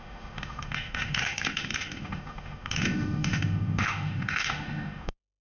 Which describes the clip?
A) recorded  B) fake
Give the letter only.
B